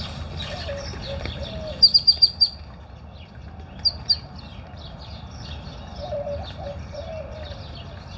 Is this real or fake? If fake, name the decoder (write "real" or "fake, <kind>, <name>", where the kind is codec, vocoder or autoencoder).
real